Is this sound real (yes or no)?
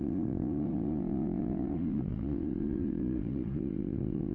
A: no